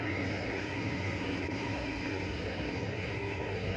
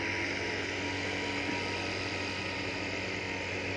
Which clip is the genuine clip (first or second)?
second